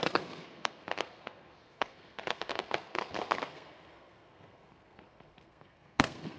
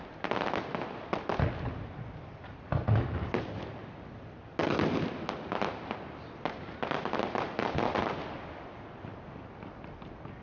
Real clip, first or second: second